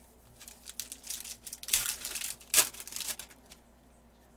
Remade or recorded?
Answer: recorded